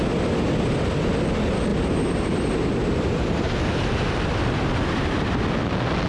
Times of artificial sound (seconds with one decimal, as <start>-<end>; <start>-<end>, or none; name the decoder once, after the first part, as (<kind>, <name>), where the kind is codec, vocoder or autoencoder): 1.7-5.4 (vocoder, BigVGAN v2)